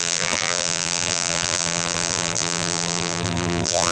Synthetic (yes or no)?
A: yes